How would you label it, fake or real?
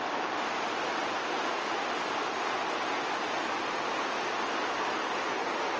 real